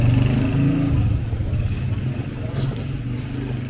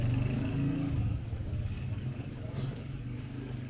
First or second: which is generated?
second